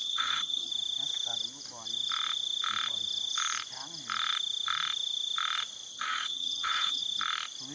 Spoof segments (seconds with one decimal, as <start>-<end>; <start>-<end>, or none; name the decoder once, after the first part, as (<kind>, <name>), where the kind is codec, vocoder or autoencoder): 0.0-0.7 (vocoder, HiFi-GAN); 5.9-7.0